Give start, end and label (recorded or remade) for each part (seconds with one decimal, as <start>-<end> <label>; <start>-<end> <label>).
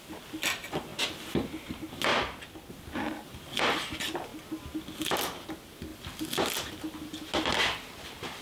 0.0-8.4 recorded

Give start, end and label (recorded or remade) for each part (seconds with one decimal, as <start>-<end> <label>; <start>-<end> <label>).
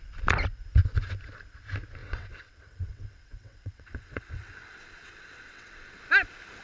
0.0-2.0 recorded; 2.0-6.0 remade; 6.0-6.6 recorded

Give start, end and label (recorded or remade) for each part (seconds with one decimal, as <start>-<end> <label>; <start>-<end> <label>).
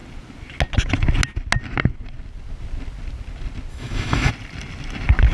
0.0-3.7 recorded; 3.7-4.3 remade; 4.3-5.3 recorded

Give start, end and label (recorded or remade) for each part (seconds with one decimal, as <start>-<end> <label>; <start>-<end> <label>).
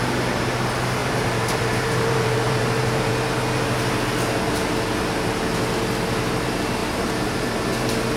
0.0-1.0 recorded; 1.0-3.1 remade; 3.1-6.8 recorded; 6.8-7.5 remade; 7.5-8.2 recorded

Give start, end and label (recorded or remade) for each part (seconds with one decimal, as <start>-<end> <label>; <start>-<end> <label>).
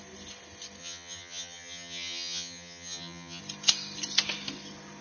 0.0-0.8 recorded; 0.8-3.4 remade; 3.4-5.0 recorded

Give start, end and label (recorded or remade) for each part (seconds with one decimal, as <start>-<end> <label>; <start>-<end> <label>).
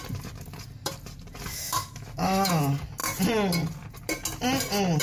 0.0-1.5 recorded; 1.5-2.6 remade; 2.6-5.0 recorded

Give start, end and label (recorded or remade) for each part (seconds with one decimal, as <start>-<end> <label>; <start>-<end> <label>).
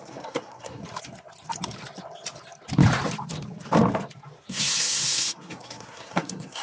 0.0-0.8 remade; 0.8-4.5 recorded; 4.5-6.6 remade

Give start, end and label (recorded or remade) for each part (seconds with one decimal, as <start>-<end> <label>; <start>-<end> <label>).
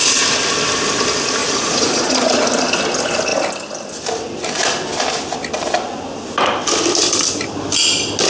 0.0-1.4 recorded; 1.4-2.5 remade; 2.5-8.3 recorded